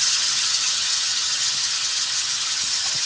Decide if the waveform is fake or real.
fake